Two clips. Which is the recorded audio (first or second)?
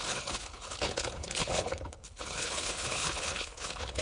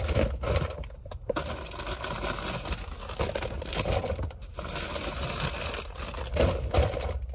second